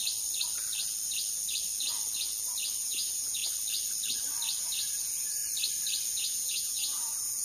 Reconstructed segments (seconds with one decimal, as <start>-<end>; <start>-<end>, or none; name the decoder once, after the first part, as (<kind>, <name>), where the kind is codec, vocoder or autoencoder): 2.8-3.4 (vocoder, Vocos); 4.6-5.4; 6.1-7.4